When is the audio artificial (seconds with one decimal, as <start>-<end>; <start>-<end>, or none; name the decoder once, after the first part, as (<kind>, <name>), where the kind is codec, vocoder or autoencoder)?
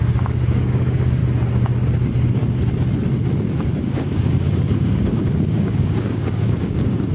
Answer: 0.0-1.2 (codec, DAC); 3.8-7.1